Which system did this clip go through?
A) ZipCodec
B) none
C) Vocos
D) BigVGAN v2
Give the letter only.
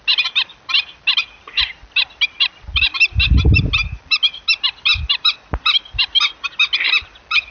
B